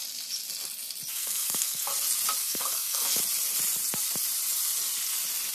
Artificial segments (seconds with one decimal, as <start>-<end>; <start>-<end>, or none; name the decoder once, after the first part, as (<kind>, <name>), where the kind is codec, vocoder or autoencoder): 1.1-1.9 (codec, SNAC); 2.4-3.2